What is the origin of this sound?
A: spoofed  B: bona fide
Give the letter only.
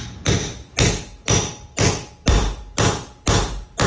B